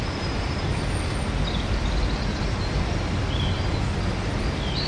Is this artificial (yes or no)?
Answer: no